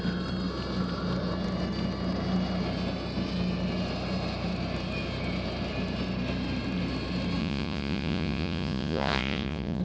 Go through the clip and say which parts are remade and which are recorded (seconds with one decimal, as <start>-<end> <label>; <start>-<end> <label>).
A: 0.0-7.4 recorded; 7.4-9.8 remade